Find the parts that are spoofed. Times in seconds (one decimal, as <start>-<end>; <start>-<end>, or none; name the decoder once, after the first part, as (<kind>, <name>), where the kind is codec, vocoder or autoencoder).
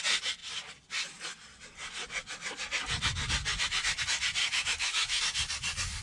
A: 4.4-5.2 (autoencoder, DAC-VAE)